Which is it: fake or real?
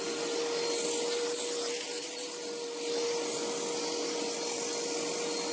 real